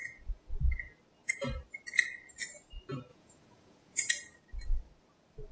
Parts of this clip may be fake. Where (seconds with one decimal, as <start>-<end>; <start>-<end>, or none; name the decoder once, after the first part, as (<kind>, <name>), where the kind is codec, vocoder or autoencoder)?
0.0-0.5 (vocoder, Vocos); 3.1-4.1